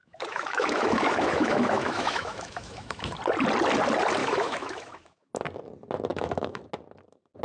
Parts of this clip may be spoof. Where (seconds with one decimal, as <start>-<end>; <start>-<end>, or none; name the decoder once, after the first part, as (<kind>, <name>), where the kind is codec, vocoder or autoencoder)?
0.0-3.2 (autoencoder, DAC-VAE); 4.2-5.3; 6.1-6.6